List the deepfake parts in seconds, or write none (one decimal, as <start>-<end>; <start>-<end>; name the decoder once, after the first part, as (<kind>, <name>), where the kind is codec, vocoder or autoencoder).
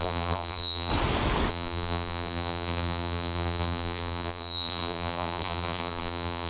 0.0-0.9 (vocoder, BigVGAN v2); 1.5-6.5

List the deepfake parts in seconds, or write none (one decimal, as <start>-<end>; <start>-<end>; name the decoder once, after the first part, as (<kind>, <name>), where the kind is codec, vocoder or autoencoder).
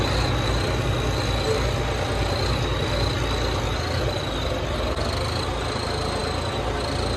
none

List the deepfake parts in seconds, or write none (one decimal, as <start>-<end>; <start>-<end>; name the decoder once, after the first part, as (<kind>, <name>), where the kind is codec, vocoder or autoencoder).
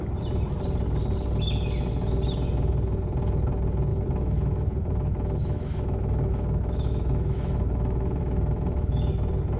3.9-9.1 (autoencoder, DAC-VAE)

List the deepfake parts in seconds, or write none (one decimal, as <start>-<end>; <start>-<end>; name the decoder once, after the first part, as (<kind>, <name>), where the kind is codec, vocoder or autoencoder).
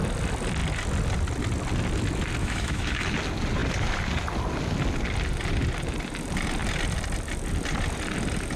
2.4-3.1 (autoencoder, DAC-VAE)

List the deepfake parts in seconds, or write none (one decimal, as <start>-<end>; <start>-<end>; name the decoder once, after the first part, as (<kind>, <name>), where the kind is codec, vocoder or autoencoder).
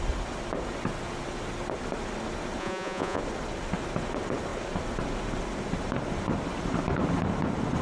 2.6-3.2 (vocoder, Vocos)